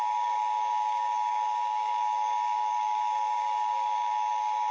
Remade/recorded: remade